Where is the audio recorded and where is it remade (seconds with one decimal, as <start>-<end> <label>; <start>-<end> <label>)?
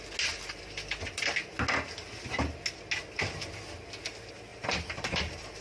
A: 0.0-4.5 recorded; 4.5-5.6 remade